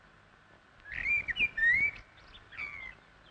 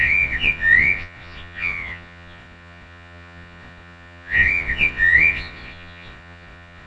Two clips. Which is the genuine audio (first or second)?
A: first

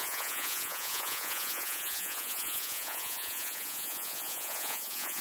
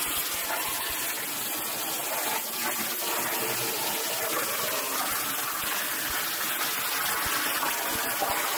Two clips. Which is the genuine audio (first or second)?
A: second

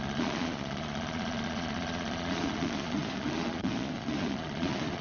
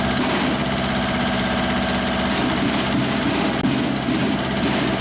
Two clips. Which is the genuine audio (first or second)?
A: second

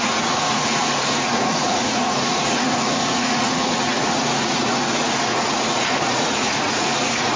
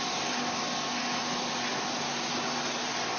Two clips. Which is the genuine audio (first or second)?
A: second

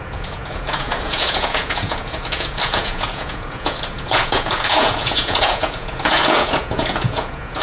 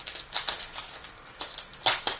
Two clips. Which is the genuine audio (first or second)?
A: second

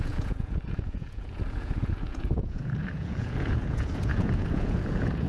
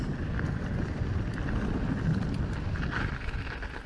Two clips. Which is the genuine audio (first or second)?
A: second